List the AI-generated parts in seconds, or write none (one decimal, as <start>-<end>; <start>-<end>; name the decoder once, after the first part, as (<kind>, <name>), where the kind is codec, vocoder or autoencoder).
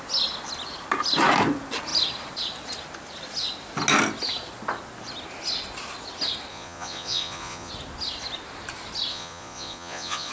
6.5-7.7 (vocoder, Vocos); 9.1-10.3